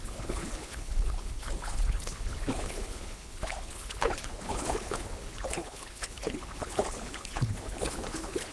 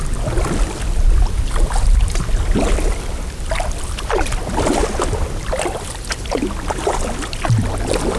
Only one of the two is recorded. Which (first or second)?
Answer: second